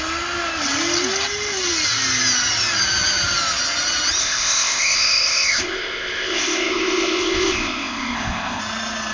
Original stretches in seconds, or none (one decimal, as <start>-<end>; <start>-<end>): 0.0-4.2; 8.6-9.1